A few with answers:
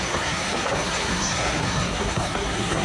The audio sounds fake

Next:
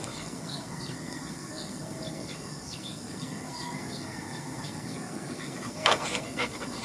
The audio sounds fake